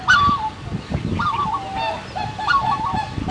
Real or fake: real